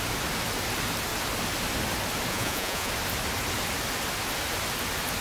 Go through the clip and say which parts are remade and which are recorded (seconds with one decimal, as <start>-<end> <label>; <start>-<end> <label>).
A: 0.0-2.3 recorded; 2.3-2.9 remade; 2.9-5.2 recorded